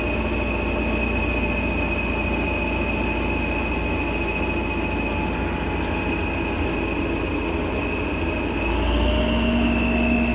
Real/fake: real